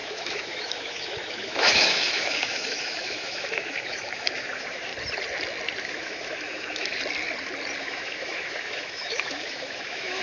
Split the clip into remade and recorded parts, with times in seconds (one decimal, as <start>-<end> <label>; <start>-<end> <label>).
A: 0.0-4.9 remade; 4.9-5.8 recorded; 5.8-6.9 remade; 6.9-7.8 recorded; 7.8-10.2 remade